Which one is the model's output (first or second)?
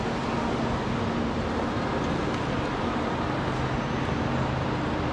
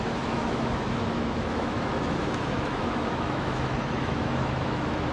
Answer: second